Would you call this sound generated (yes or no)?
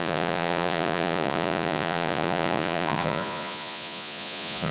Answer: yes